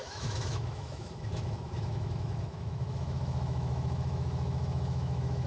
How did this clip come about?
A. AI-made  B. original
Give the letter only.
A